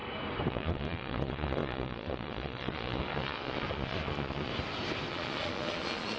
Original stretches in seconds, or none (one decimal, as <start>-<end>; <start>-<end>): 0.0-0.5; 4.5-5.1